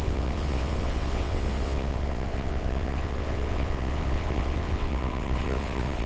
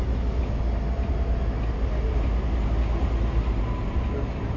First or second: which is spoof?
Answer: first